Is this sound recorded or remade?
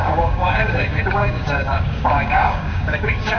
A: remade